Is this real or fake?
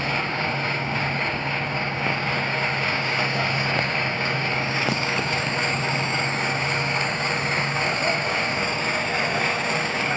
fake